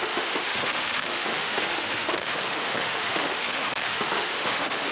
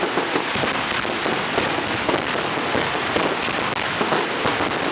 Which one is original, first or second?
second